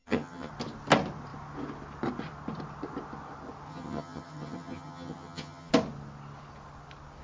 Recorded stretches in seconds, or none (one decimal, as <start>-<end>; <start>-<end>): 0.5-3.7; 5.7-7.2